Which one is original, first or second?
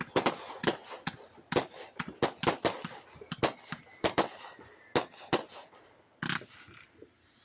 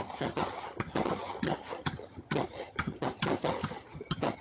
first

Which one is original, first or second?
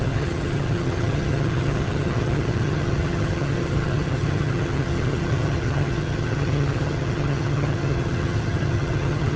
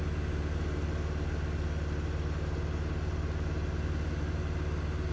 second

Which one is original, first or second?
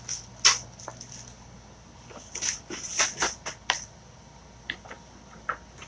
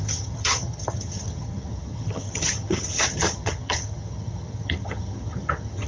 first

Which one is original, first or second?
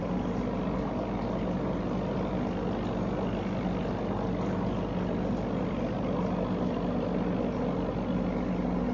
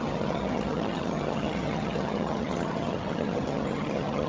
first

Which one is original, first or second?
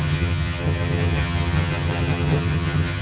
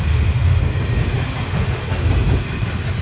second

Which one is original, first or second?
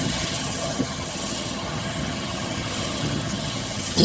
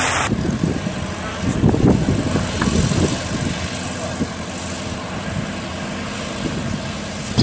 second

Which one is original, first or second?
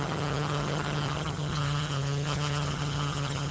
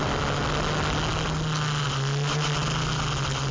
second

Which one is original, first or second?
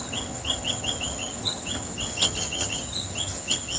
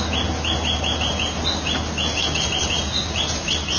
second